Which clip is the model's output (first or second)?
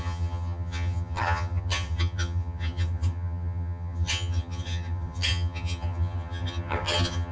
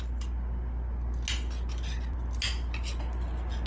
first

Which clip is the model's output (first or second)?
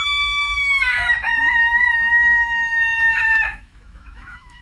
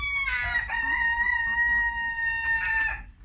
first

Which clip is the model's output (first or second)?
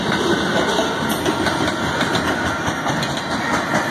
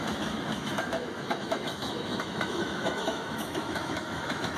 second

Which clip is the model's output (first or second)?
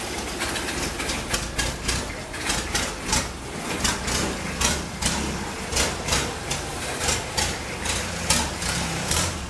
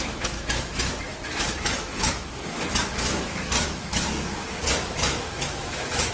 second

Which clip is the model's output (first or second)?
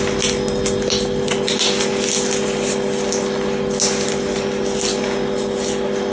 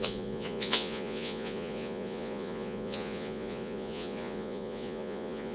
second